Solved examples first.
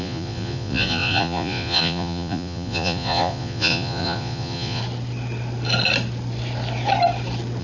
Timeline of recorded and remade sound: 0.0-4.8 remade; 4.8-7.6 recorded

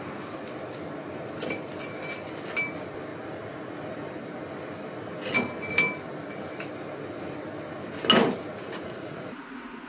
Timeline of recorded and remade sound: 0.0-3.1 recorded; 3.1-3.7 remade; 3.7-8.5 recorded; 8.5-9.9 remade

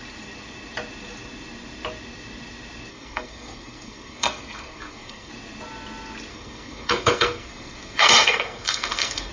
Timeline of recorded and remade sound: 0.0-2.9 recorded; 2.9-5.3 remade; 5.3-6.3 recorded; 6.3-9.3 remade

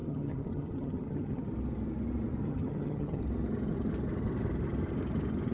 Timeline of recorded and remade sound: 0.0-1.5 remade; 1.5-2.4 recorded; 2.4-3.2 remade; 3.2-5.5 recorded

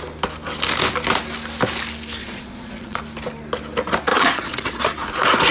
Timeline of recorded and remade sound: 0.0-2.2 recorded; 2.2-3.0 remade; 3.0-4.1 recorded; 4.1-4.8 remade; 4.8-5.5 recorded

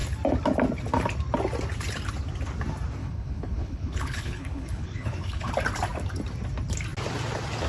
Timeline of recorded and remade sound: 0.0-3.0 recorded; 3.0-5.5 remade; 5.5-7.7 recorded

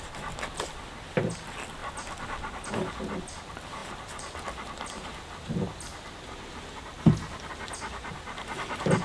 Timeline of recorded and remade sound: 0.0-1.8 recorded; 1.8-2.7 remade; 2.7-9.0 recorded